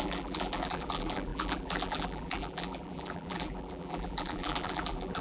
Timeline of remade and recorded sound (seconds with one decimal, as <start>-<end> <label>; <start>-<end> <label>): 0.0-5.2 remade